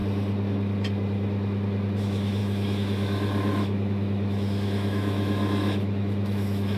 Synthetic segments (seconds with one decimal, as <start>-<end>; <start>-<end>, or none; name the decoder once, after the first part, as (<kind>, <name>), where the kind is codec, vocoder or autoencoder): 2.0-6.8 (autoencoder, DAC-VAE)